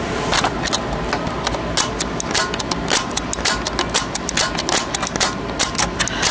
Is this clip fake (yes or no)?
no